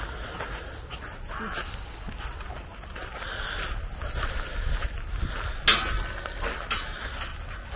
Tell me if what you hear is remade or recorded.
recorded